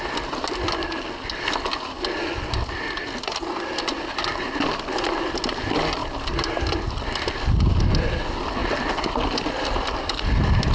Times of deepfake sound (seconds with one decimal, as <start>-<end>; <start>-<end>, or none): none